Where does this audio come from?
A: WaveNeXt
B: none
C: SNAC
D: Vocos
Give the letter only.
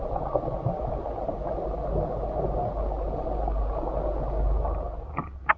B